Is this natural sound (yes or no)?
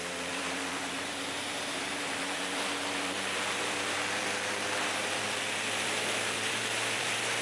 no